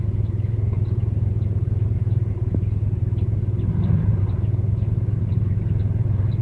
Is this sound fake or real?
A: real